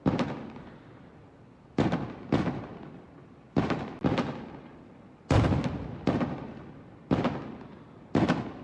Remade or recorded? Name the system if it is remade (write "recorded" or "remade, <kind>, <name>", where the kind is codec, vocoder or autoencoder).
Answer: recorded